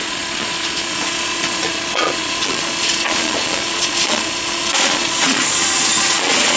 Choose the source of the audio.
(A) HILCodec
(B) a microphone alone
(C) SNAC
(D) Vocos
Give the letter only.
D